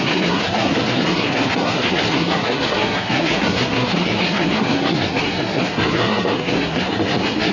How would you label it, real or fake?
fake